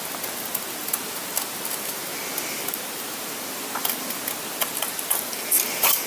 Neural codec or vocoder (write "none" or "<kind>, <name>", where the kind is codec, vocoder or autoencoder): none